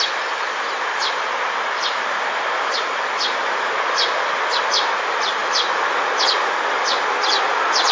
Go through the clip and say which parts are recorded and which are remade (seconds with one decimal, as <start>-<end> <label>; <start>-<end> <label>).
0.0-7.9 recorded